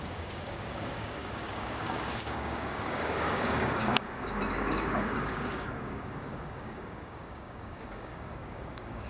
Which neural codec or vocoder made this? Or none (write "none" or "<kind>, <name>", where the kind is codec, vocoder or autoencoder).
codec, DAC